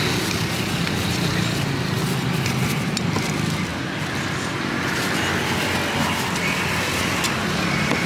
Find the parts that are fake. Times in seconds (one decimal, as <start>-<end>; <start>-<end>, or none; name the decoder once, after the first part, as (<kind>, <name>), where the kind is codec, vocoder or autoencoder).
none